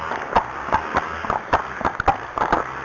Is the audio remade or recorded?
recorded